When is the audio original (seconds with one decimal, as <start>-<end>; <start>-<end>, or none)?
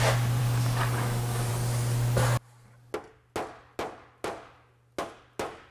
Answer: 0.0-0.4; 1.5-5.7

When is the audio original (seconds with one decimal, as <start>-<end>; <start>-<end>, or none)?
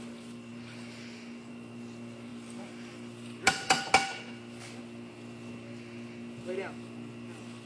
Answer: 0.0-7.7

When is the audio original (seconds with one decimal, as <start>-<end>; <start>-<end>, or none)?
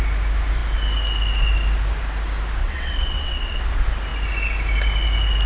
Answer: 0.0-2.6; 3.6-5.5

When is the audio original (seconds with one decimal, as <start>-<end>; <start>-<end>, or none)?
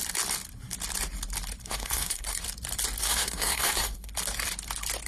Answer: 0.0-1.6; 2.4-3.0; 4.1-5.1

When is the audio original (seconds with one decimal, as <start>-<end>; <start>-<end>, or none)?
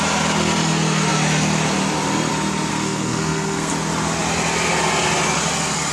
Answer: 0.0-2.7; 3.7-5.9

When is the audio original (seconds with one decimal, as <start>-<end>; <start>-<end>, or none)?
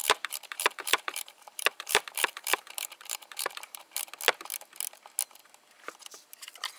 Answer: 4.1-6.8